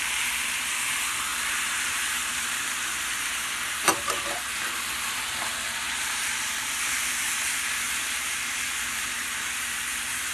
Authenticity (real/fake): real